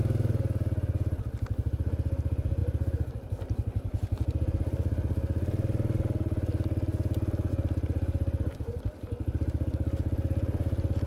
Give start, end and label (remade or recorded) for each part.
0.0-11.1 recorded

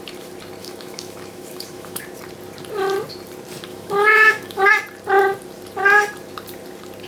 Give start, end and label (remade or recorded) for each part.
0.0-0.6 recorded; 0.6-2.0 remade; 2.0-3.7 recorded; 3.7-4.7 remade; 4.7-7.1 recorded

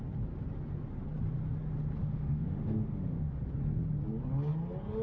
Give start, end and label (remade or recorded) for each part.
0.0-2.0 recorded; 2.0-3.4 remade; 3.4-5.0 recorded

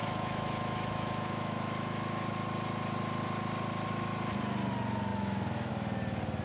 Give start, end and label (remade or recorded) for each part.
0.0-2.3 remade; 2.3-5.1 recorded; 5.1-5.7 remade; 5.7-6.4 recorded

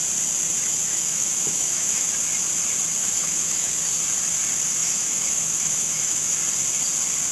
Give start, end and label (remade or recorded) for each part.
0.0-0.9 recorded; 0.9-2.1 remade; 2.1-3.0 recorded; 3.0-3.7 remade; 3.7-4.8 recorded; 4.8-6.4 remade; 6.4-7.3 recorded

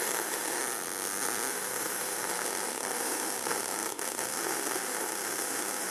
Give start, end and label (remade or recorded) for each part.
0.0-0.6 remade; 0.6-1.5 recorded; 1.5-5.9 remade

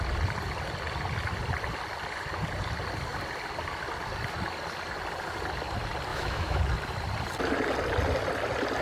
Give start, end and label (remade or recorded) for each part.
0.0-6.1 recorded; 6.1-6.6 remade; 6.6-8.8 recorded

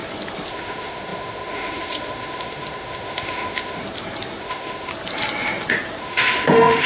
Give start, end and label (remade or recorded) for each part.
0.0-0.5 recorded; 0.5-3.8 remade; 3.8-4.4 recorded; 4.4-4.9 remade; 4.9-6.0 recorded; 6.0-6.9 remade